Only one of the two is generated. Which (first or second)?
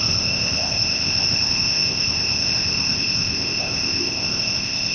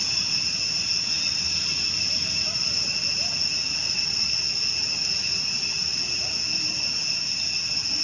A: first